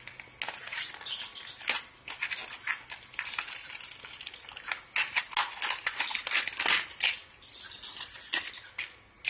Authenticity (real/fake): real